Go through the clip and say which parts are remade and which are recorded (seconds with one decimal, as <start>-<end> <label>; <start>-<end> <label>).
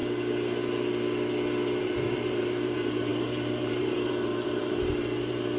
0.0-1.8 recorded; 1.8-5.6 remade